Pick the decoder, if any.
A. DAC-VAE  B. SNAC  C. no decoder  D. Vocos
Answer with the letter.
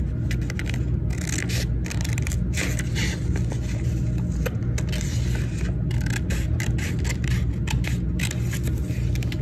C